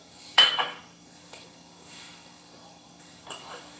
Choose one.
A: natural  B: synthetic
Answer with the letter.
B